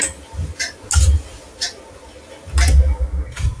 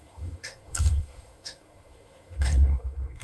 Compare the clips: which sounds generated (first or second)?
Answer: second